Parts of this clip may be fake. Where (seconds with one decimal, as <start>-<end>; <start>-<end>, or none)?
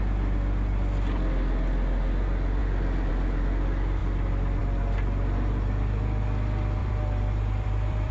6.8-8.1